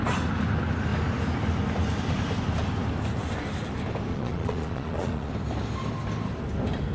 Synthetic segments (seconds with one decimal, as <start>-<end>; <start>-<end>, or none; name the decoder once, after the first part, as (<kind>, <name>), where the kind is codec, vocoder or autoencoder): 4.1-5.3 (vocoder, Vocos)